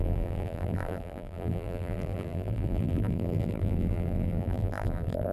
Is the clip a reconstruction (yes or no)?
yes